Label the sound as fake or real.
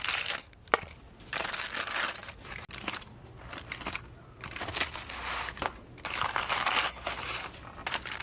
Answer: real